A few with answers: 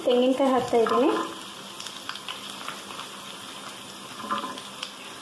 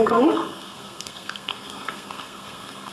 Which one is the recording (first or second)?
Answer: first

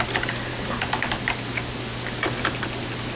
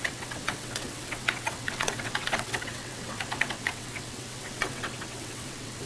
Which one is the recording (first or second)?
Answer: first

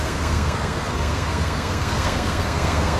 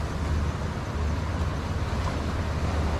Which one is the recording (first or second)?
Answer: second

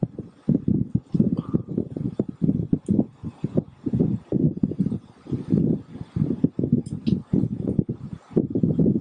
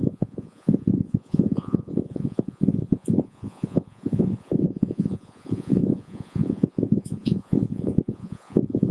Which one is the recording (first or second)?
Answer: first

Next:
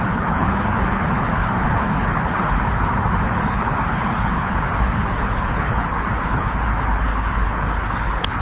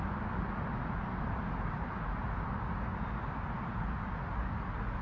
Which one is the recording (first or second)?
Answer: second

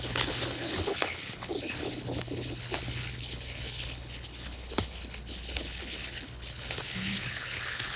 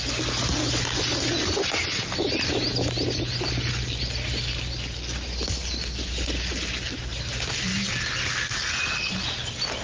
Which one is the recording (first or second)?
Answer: second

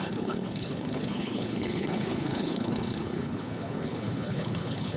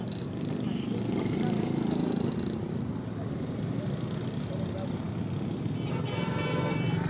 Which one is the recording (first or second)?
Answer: second